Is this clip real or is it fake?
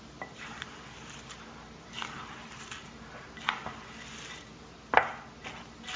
real